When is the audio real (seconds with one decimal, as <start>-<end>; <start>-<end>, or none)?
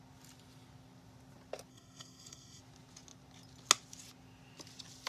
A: 0.0-1.7; 2.6-5.1